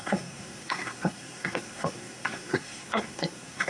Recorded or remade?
remade